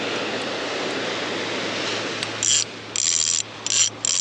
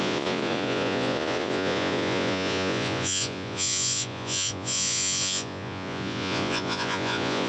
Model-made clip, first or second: second